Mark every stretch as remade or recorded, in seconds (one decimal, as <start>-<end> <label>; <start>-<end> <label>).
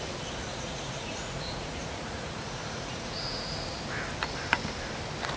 0.0-0.5 recorded; 0.5-3.7 remade; 3.7-5.4 recorded